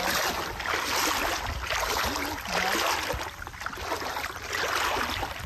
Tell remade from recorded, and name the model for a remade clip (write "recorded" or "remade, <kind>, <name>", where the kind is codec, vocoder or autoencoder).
recorded